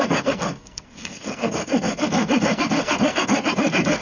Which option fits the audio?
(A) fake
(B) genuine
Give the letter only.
A